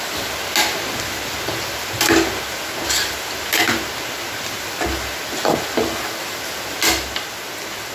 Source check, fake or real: real